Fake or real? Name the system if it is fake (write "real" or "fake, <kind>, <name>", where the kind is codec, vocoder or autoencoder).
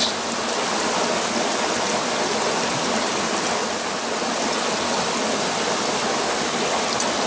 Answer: real